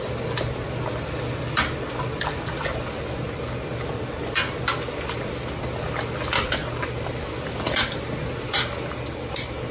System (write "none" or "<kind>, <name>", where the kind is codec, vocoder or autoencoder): none